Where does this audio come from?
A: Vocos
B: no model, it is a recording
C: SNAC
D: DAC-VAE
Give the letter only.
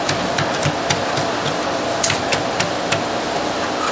B